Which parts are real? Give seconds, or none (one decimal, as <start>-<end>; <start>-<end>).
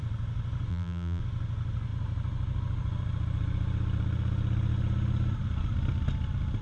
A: 0.0-0.7; 1.2-6.6